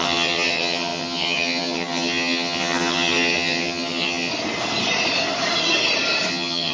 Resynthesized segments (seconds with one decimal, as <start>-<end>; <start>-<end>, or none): 0.0-4.3; 6.3-6.7